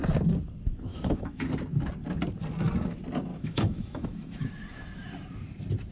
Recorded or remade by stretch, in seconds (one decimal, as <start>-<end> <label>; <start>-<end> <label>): 0.0-0.9 recorded; 0.9-1.5 remade; 1.5-3.3 recorded; 3.3-4.5 remade; 4.5-5.9 recorded